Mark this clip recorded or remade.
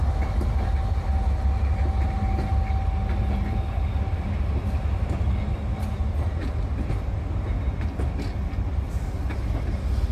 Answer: recorded